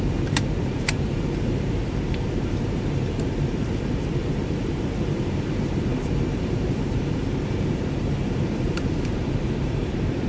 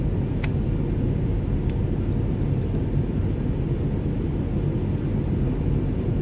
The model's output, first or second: first